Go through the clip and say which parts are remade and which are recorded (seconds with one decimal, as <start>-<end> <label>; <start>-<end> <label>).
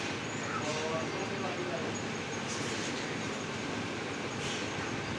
0.0-5.2 recorded